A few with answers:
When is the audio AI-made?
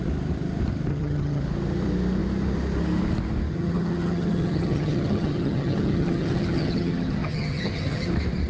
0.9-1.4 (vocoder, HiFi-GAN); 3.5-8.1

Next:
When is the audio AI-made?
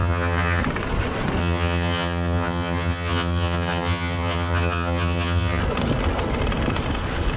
0.0-0.6 (vocoder, HiFi-GAN); 1.4-5.6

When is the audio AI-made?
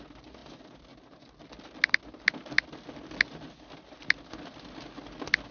none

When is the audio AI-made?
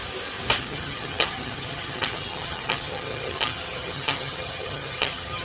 0.6-5.4 (vocoder, HiFi-GAN)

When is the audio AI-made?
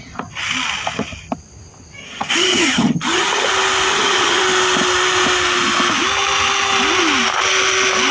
2.0-3.5 (vocoder, HiFi-GAN); 3.9-4.4